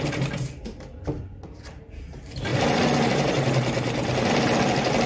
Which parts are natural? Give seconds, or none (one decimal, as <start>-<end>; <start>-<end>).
0.0-2.5; 4.3-5.1